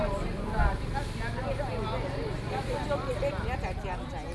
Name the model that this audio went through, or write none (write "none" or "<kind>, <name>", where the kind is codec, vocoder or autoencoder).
none